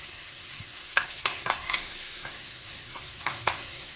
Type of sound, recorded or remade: remade